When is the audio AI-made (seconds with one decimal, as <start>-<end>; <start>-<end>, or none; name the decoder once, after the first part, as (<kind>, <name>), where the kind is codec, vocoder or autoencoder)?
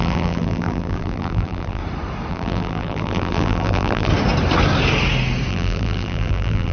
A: 0.0-1.8 (vocoder, BigVGAN v2); 2.3-4.1; 5.5-6.7